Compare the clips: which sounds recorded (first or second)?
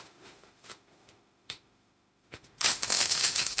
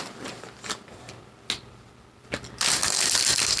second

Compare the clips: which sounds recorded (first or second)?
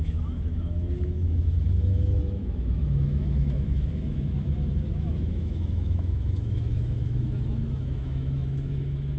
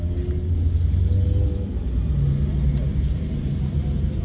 second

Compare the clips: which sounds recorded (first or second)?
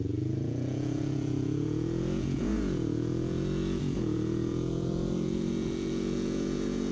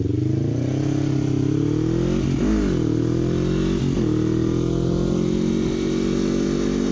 second